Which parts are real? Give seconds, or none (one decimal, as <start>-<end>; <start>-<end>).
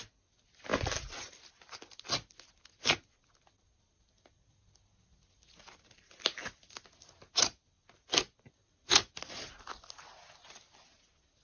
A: 0.0-11.4